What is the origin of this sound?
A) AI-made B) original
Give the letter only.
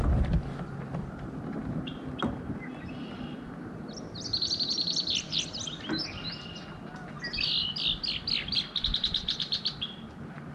B